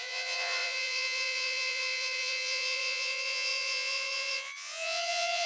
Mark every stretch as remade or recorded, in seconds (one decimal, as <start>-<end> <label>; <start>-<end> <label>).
0.0-5.5 remade